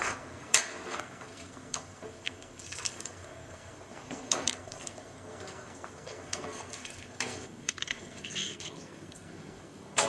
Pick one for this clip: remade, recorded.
remade